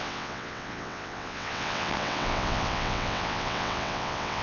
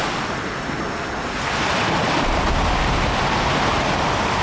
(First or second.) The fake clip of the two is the first